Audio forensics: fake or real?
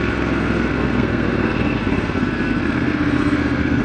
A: fake